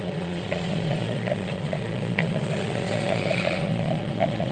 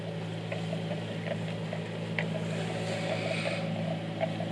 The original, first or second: second